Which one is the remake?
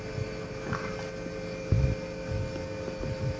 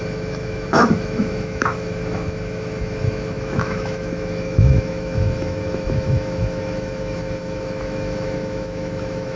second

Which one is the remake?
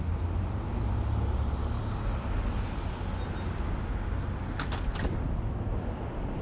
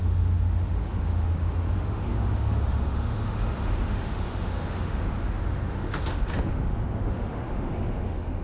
second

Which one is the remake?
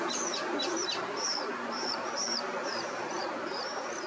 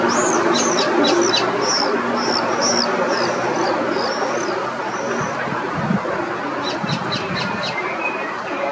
first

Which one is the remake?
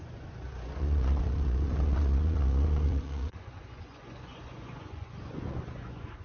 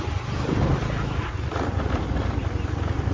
first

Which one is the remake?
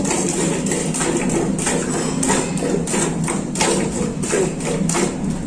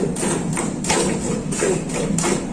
second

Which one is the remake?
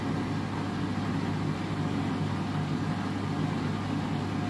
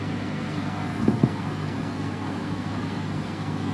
second